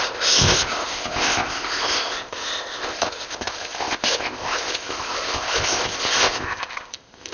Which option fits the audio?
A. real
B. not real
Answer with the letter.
B